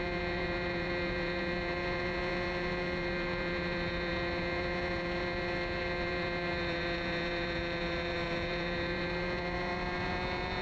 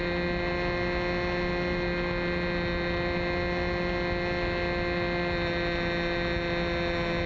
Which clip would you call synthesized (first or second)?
first